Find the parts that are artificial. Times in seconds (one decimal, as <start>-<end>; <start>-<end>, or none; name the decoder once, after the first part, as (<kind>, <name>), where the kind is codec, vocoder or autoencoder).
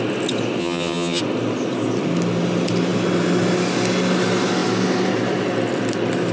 0.6-1.2 (vocoder, HiFi-GAN)